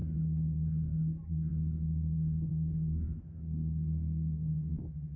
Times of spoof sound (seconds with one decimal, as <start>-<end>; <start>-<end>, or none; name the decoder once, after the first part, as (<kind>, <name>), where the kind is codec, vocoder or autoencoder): 2.5-5.2 (codec, SNAC)